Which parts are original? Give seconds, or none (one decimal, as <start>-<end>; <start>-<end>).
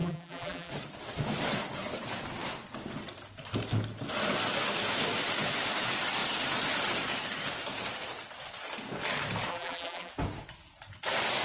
0.7-9.5; 10.1-11.4